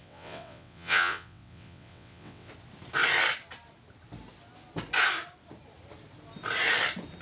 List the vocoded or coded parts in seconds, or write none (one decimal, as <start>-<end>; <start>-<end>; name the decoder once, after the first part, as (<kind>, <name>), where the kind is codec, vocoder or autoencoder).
0.0-2.5 (vocoder, WaveNeXt)